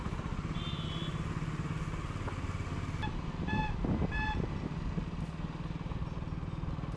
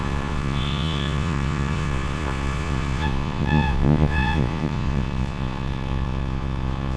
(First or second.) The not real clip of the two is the second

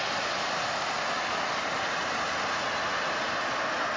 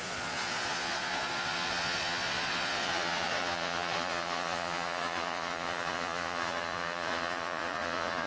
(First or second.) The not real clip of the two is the second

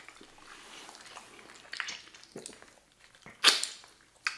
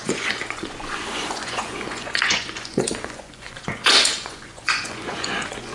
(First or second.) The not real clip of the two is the second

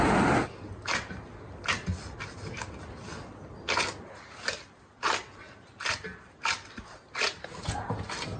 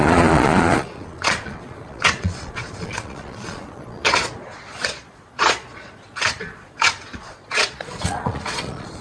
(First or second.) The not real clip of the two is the second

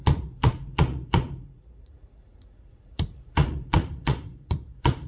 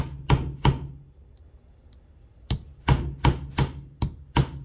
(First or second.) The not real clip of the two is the first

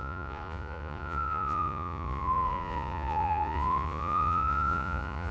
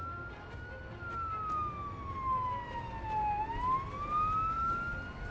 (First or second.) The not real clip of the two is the first